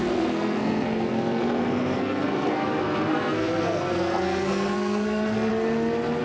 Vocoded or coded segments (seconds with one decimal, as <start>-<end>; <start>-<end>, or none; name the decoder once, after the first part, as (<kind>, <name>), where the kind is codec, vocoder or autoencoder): 0.0-5.5 (codec, SNAC)